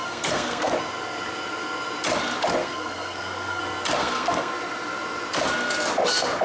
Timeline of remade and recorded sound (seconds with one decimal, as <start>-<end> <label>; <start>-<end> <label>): 0.0-0.7 remade; 0.7-2.6 recorded; 2.6-3.6 remade; 3.6-4.0 recorded; 4.0-4.5 remade; 4.5-6.4 recorded